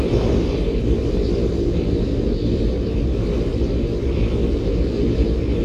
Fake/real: real